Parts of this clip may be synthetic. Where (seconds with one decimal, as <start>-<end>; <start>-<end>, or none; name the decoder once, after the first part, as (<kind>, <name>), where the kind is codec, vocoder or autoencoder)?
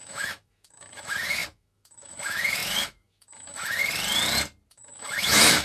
0.0-3.8 (autoencoder, DAC-VAE); 4.7-5.6